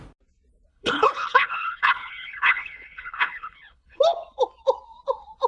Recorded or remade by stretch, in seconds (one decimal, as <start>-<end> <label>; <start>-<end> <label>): 0.0-0.7 recorded; 0.7-4.0 remade; 4.0-5.5 recorded